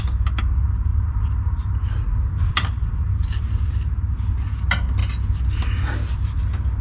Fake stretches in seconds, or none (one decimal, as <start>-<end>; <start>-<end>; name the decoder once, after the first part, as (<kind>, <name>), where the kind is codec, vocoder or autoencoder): 0.9-3.4 (vocoder, BigVGAN v2)